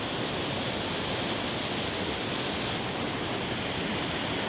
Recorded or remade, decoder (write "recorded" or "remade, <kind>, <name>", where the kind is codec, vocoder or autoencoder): recorded